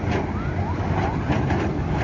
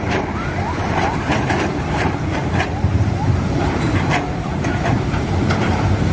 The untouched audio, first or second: first